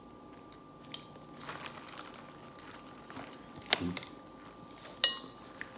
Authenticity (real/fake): real